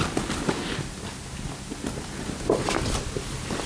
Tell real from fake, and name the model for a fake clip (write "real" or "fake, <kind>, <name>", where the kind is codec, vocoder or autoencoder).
real